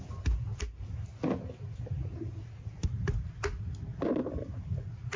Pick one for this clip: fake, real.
real